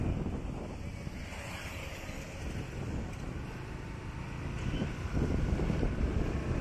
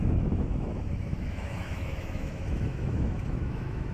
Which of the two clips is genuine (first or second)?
first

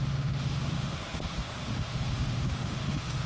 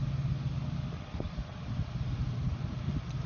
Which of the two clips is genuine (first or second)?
second